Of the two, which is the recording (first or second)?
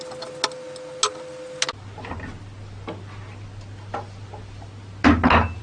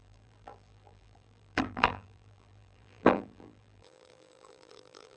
first